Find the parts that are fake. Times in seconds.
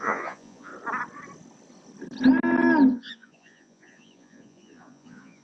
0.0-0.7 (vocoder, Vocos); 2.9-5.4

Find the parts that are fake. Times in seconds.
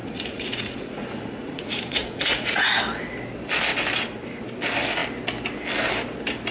0.0-2.8 (vocoder, Vocos)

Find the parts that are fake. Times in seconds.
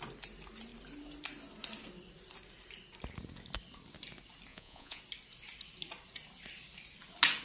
4.5-5.0 (vocoder, Vocos)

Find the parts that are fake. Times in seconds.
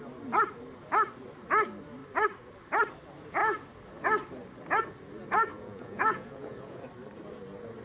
5.5-6.8 (vocoder, Vocos)